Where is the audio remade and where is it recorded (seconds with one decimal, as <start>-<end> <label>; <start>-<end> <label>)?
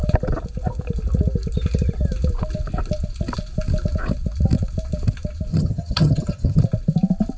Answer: 0.0-5.5 recorded; 5.5-6.6 remade; 6.6-7.4 recorded